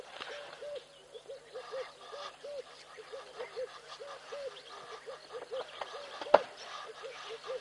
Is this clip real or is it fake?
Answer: fake